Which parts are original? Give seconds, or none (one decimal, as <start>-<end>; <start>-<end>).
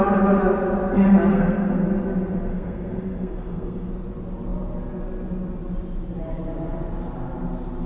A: 0.0-1.3; 1.9-2.5; 3.9-7.9